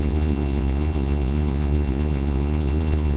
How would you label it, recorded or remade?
remade